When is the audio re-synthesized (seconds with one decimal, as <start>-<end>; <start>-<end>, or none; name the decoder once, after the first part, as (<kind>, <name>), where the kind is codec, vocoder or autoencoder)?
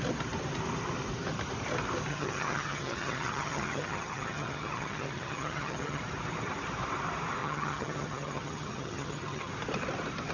2.1-6.0 (vocoder, HiFi-GAN); 7.4-9.5